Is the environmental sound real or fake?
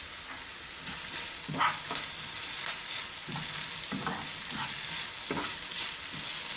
real